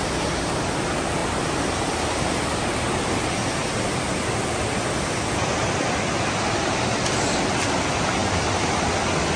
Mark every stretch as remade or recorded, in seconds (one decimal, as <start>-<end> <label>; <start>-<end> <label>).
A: 0.0-9.4 recorded